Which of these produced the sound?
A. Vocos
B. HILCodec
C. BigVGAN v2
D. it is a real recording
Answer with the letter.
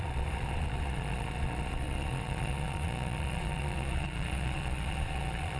A